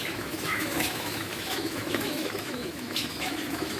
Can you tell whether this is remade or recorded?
remade